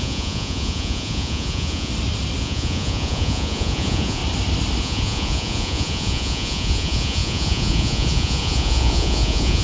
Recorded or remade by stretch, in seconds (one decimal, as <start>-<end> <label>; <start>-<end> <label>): 0.0-1.9 remade; 1.9-2.4 recorded; 2.4-4.2 remade; 4.2-4.8 recorded; 4.8-9.6 remade

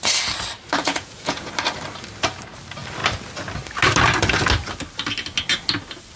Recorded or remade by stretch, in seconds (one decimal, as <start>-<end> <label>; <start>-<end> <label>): 0.0-0.8 recorded; 0.8-1.5 remade; 1.5-6.2 recorded

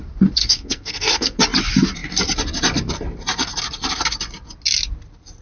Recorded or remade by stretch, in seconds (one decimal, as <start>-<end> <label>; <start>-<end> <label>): 0.0-0.4 recorded; 0.4-1.4 remade; 1.4-5.4 recorded

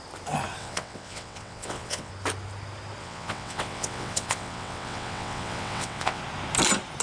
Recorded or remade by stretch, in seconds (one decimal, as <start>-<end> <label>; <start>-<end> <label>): 0.0-0.6 recorded; 0.6-2.1 remade; 2.1-3.0 recorded; 3.0-6.2 remade; 6.2-7.0 recorded